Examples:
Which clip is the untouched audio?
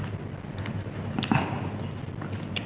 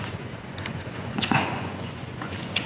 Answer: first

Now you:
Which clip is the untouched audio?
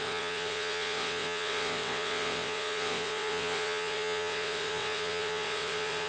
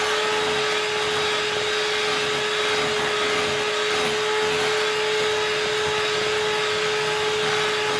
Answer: second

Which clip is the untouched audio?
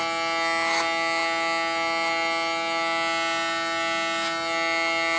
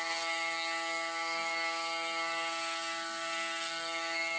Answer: first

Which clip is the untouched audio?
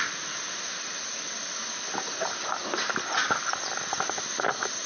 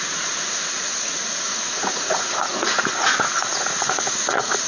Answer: first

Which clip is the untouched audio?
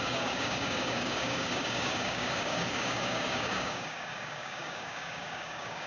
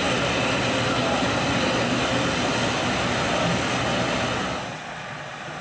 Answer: second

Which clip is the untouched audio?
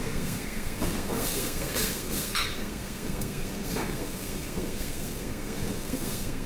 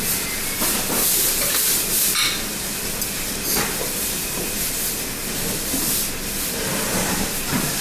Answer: second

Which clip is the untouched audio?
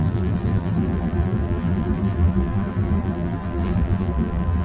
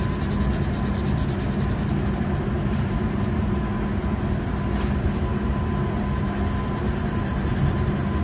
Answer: second